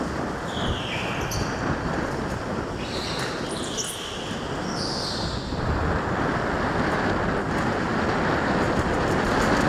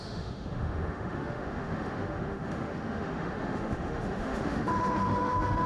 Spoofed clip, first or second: second